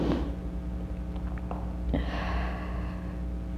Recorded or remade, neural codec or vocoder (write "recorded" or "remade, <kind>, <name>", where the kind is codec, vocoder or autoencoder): recorded